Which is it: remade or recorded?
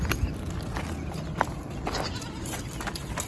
recorded